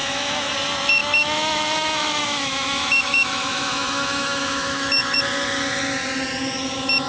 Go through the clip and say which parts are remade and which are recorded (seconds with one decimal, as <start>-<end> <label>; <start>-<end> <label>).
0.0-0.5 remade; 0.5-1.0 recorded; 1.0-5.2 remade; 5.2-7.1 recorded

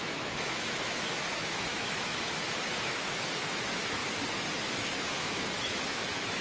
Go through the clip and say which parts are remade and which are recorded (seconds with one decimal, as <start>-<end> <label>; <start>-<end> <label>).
0.0-4.0 remade; 4.0-4.6 recorded; 4.6-6.4 remade

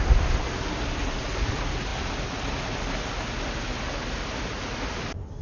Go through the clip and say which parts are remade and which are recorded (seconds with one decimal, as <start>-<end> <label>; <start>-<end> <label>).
0.0-5.4 recorded

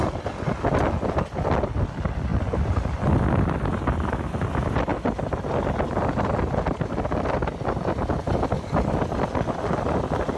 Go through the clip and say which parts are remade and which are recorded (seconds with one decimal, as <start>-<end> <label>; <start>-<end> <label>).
0.0-10.4 recorded

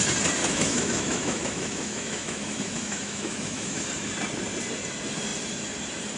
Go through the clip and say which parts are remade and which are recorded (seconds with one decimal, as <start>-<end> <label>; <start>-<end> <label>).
0.0-0.4 recorded; 0.4-3.8 remade; 3.8-6.2 recorded

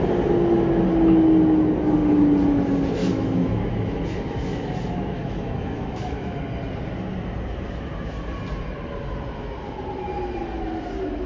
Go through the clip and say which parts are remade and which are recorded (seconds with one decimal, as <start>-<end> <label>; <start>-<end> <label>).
0.0-3.0 recorded; 3.0-6.4 remade; 6.4-11.3 recorded

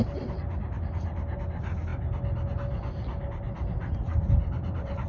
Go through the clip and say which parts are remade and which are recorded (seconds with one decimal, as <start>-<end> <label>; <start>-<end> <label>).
0.0-5.1 recorded

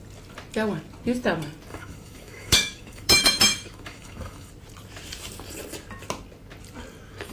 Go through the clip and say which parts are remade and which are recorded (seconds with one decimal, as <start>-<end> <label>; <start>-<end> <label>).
0.0-1.7 recorded; 1.7-4.5 remade; 4.5-7.3 recorded